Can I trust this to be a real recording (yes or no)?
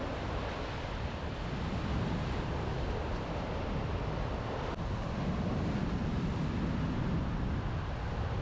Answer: yes